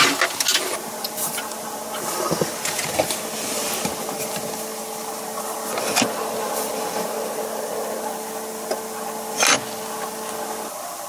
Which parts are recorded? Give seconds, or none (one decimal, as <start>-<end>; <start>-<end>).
0.0-11.1